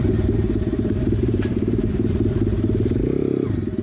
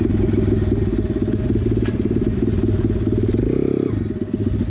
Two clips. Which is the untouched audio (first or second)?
second